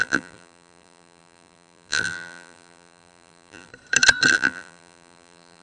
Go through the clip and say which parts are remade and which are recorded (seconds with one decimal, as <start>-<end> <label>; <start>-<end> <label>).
0.0-3.7 remade; 3.7-4.3 recorded; 4.3-5.6 remade